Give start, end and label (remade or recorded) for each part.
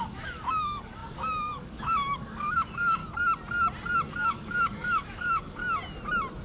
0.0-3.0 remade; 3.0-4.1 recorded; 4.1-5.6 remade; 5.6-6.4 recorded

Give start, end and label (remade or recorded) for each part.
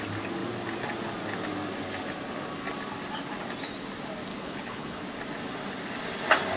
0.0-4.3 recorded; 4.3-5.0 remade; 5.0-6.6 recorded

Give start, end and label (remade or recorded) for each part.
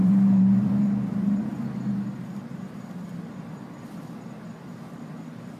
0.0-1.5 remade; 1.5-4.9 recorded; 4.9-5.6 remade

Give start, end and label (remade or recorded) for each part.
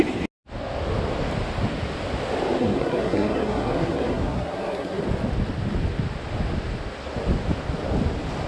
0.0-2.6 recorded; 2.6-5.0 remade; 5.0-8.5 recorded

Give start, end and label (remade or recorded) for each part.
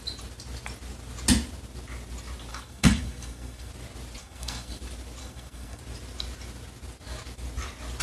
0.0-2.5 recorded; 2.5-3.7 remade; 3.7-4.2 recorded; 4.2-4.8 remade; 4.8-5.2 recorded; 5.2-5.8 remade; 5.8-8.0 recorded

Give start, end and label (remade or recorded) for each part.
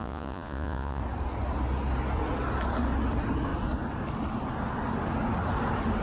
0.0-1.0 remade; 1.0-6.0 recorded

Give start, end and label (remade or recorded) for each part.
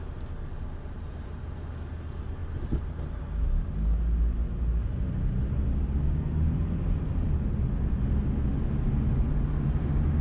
0.0-10.2 recorded